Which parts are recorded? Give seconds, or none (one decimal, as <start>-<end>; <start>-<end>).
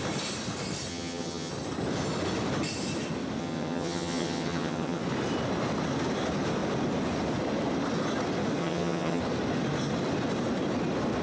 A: 0.0-0.9; 1.5-3.4; 5.0-8.6; 9.2-11.2